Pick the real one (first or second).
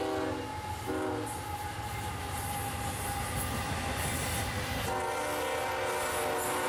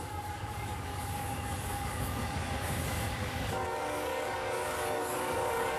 first